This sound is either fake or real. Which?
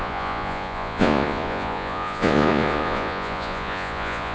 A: fake